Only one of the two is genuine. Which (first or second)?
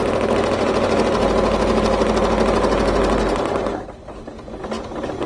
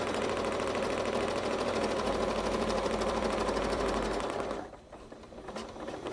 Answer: first